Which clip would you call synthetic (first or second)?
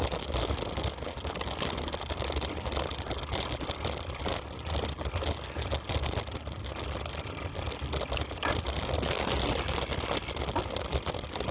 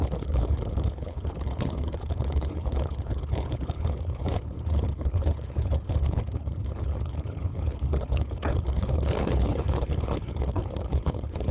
second